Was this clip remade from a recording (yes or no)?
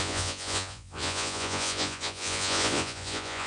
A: yes